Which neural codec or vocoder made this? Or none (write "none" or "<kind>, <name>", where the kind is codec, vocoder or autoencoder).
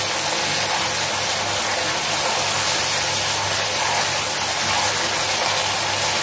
none